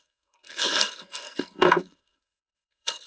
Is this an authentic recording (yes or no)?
no